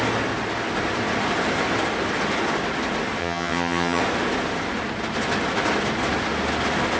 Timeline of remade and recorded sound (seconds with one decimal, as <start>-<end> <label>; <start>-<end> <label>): 0.0-3.2 recorded; 3.2-4.0 remade; 4.0-7.0 recorded